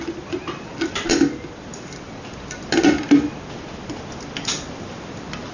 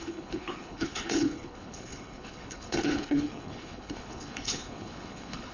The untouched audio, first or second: first